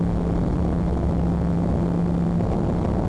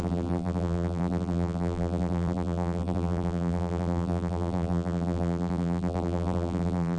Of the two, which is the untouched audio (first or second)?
first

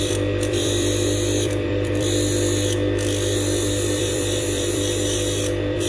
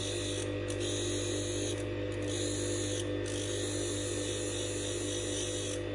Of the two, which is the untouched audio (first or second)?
second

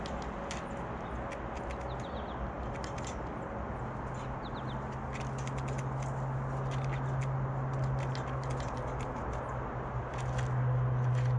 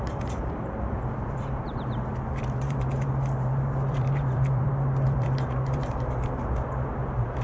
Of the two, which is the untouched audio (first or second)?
first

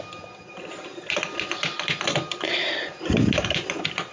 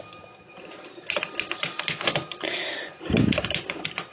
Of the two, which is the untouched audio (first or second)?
first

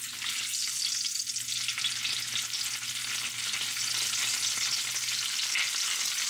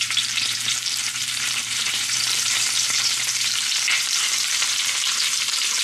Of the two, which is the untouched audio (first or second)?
first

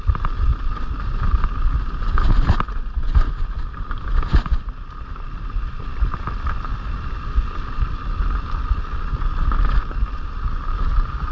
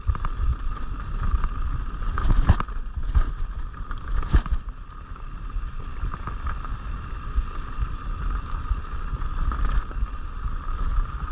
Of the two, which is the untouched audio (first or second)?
first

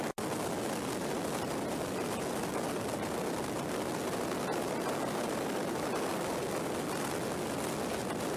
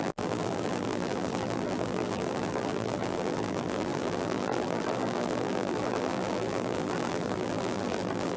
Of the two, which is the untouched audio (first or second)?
first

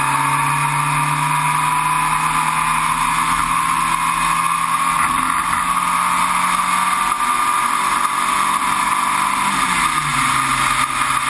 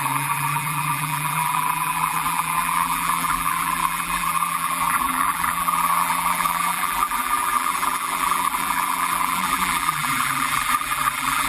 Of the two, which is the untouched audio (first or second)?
first